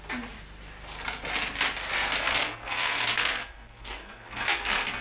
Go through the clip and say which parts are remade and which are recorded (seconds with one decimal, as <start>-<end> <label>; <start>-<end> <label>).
0.0-2.3 recorded; 2.3-5.0 remade